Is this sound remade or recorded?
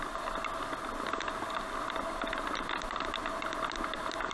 recorded